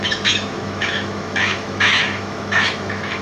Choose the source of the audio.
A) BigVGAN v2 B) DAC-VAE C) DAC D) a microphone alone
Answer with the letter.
B